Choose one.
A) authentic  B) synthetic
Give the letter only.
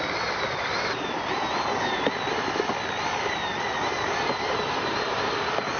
A